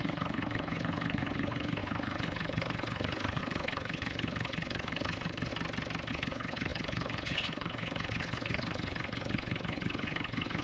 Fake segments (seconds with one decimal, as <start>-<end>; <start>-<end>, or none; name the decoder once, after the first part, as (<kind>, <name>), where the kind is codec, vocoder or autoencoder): 0.0-5.5 (codec, HILCodec); 6.1-10.6